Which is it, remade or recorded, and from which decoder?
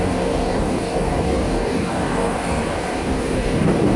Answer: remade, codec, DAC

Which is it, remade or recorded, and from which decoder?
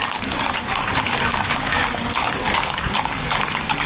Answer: remade, codec, DAC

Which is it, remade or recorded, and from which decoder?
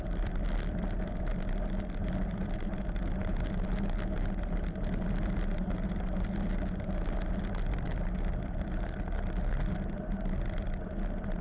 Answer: recorded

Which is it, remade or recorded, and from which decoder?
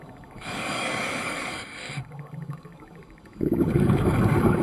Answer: remade, codec, DAC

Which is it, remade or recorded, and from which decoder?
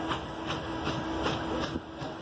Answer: recorded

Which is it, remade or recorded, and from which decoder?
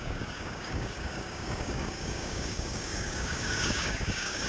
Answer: remade, codec, DAC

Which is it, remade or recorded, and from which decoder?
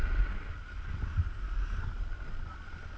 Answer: recorded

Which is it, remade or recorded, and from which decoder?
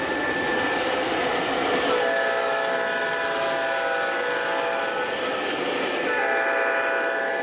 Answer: recorded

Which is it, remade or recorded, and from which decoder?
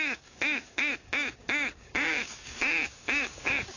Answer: remade, codec, DAC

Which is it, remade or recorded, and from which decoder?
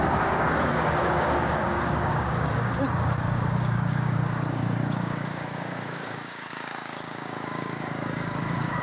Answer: remade, codec, DAC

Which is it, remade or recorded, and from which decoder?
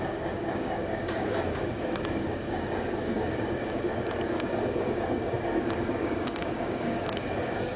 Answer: remade, codec, DAC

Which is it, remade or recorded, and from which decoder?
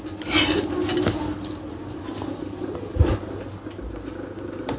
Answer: recorded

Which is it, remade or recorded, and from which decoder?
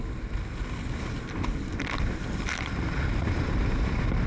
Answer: recorded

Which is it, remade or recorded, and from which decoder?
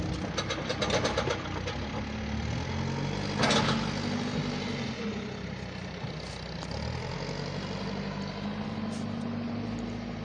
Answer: recorded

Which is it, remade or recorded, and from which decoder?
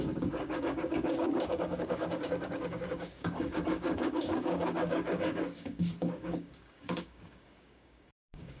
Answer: remade, codec, DAC